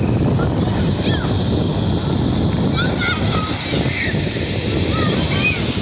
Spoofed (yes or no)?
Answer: no